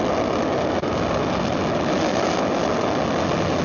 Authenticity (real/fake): real